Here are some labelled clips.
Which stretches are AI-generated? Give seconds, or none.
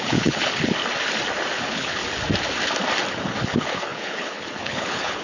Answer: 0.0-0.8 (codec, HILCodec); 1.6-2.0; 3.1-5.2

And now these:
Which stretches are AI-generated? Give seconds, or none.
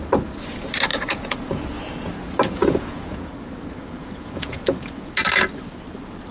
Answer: 0.9-2.1 (vocoder, Vocos); 2.6-3.3; 4.0-5.1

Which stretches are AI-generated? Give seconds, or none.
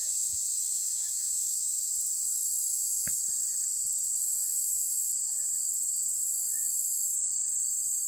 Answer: 0.0-1.9 (autoencoder, DAC-VAE); 2.7-3.2; 4.5-5.1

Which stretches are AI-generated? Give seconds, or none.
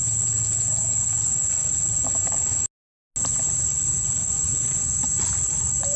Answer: 4.2-4.9 (vocoder, Vocos)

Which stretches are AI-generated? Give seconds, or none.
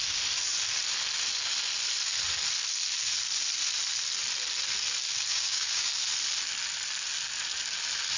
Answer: 5.3-5.9 (codec, DAC)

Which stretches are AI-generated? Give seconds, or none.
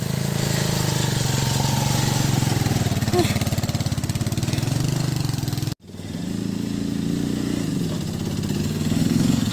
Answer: 8.6-9.5 (codec, SNAC)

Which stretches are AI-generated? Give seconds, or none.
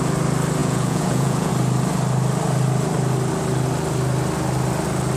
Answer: 0.6-1.5 (vocoder, Vocos)